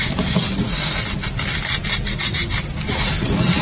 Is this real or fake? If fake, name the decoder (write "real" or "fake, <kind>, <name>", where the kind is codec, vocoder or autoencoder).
real